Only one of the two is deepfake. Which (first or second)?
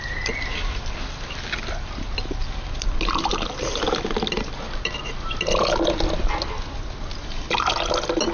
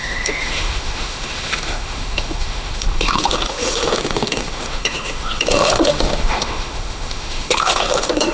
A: second